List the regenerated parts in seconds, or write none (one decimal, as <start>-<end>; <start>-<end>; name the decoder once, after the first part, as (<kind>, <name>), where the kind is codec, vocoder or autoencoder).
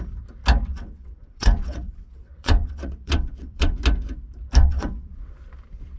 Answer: 0.7-3.7 (vocoder, WaveNeXt); 4.6-5.3